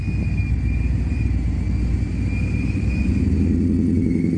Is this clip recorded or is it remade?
recorded